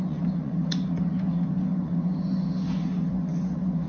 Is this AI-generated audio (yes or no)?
yes